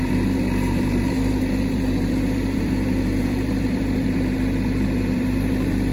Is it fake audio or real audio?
fake